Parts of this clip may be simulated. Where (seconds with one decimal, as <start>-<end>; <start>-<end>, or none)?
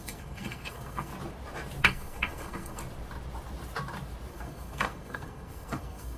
0.0-1.1; 1.8-2.8; 4.3-6.2